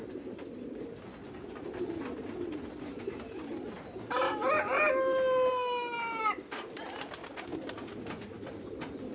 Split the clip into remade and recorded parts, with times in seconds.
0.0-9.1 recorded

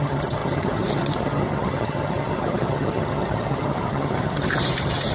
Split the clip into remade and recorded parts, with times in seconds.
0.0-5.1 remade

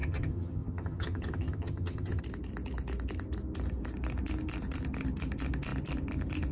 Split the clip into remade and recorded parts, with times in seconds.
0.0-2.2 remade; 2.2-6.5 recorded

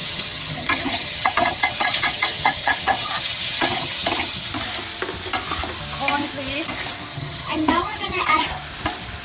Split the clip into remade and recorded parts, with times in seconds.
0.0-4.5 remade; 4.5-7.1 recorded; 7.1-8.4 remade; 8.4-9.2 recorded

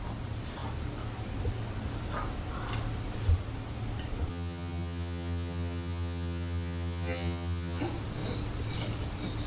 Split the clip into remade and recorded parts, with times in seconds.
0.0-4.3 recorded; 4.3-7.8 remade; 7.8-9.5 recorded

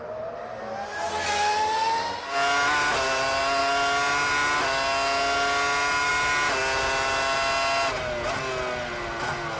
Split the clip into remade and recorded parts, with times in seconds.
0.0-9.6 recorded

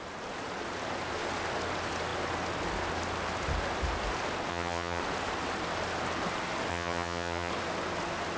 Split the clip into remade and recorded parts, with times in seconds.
0.0-4.5 recorded; 4.5-5.0 remade; 5.0-6.7 recorded; 6.7-7.5 remade; 7.5-8.4 recorded